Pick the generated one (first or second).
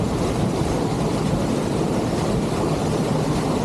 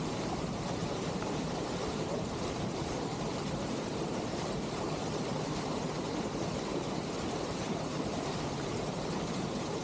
second